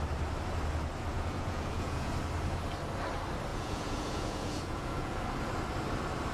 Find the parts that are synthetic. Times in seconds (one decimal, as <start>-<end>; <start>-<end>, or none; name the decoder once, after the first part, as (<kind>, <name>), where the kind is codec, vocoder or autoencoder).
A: 1.1-2.1 (vocoder, Vocos); 3.5-5.2

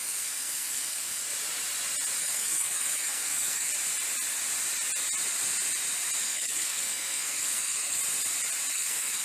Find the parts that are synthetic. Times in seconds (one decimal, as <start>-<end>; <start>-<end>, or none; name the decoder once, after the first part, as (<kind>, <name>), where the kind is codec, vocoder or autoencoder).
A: 0.0-1.2 (codec, SNAC); 2.2-3.7; 6.2-8.0; 8.7-9.2

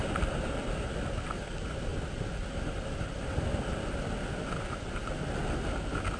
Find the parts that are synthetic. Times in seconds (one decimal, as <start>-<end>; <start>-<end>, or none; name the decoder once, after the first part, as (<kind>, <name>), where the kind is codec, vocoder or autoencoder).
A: none

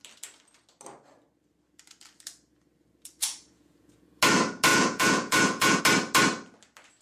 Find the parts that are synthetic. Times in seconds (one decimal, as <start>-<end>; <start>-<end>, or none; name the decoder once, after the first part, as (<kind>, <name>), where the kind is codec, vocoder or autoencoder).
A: 3.2-4.2 (vocoder, Vocos); 4.7-5.8

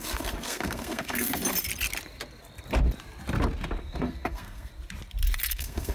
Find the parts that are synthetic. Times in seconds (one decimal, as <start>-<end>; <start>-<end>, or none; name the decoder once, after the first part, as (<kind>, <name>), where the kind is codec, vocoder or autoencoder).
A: 0.0-1.4 (codec, SNAC); 3.8-4.7; 5.5-5.9